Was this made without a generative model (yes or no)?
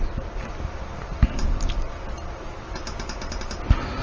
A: yes